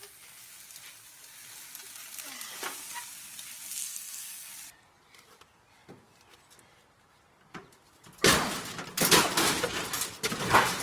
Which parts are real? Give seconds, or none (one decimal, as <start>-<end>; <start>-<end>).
0.0-3.8; 4.5-10.8